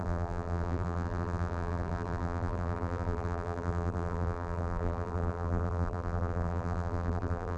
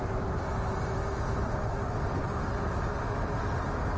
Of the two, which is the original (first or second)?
second